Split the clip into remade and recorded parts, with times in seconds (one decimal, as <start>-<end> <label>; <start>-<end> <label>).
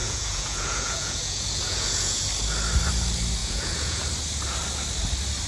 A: 0.0-2.3 remade; 2.3-3.4 recorded; 3.4-4.0 remade; 4.0-5.5 recorded